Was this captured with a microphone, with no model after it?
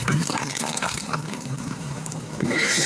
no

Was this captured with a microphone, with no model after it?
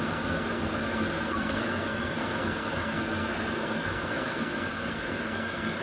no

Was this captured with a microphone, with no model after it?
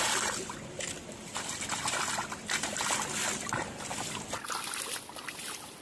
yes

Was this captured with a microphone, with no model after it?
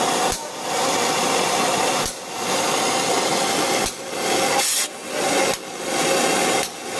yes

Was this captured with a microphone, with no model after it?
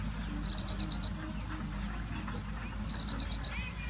yes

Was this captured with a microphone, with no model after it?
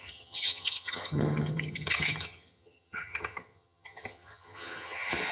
no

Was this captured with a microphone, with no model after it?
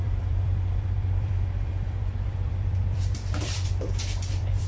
no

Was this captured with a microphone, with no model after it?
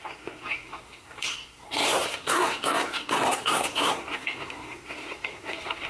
no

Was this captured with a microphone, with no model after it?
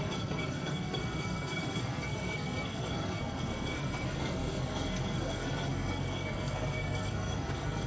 no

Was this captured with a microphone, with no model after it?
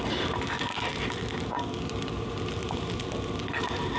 yes